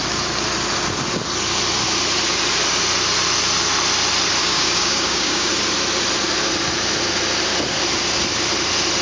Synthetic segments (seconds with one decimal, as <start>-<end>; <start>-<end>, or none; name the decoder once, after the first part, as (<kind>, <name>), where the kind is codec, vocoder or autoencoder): 4.4-5.5 (codec, DAC)